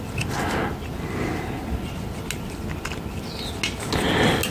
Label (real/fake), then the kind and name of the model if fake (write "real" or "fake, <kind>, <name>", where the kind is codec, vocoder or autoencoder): real